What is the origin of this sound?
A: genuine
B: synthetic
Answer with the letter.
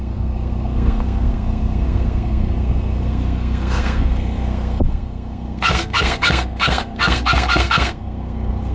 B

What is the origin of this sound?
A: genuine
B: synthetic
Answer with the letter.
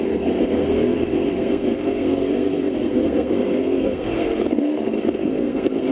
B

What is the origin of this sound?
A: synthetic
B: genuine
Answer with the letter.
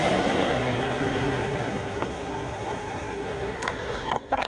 A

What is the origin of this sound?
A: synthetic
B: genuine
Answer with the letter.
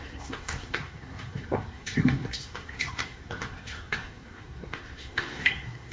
A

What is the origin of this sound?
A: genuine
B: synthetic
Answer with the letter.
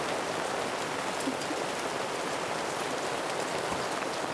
A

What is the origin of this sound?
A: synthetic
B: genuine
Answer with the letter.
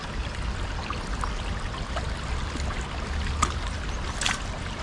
B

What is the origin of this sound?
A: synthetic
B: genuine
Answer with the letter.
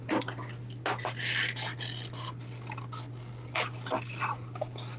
B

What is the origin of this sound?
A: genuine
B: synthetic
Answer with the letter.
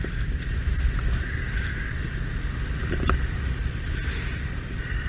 A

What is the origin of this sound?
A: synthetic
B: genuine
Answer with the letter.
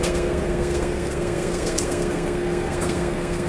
A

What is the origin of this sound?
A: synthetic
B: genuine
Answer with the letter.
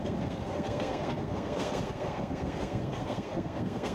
A